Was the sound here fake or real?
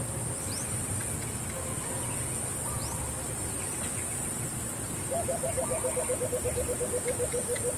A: real